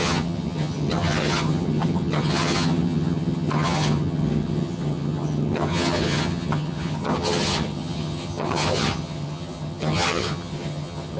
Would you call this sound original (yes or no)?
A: no